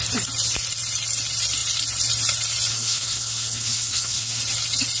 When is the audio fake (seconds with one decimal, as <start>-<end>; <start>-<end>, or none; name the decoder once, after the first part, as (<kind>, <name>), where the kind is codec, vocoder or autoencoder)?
2.7-4.4 (codec, SNAC)